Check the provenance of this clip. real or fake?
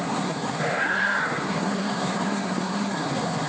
fake